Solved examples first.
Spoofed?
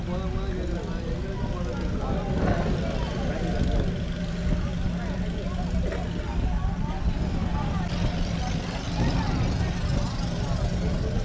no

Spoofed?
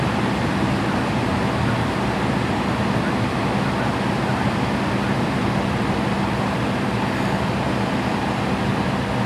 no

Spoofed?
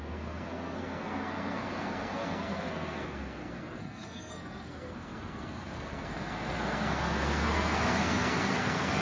yes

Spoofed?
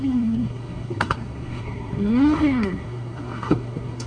yes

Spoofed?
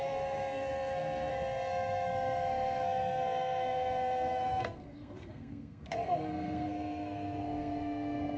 yes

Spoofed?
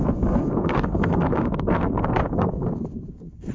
yes